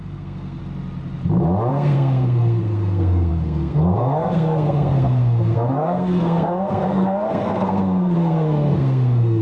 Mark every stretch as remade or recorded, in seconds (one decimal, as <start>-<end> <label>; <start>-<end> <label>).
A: 0.0-0.6 remade; 0.6-1.7 recorded; 1.7-9.4 remade